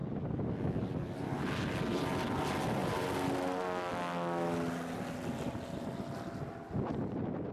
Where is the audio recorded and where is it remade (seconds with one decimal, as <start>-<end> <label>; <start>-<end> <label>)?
0.0-7.5 recorded